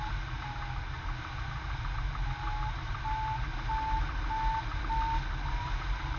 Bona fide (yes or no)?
yes